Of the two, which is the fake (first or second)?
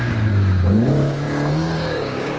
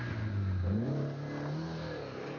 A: first